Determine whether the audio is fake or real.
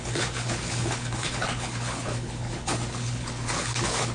fake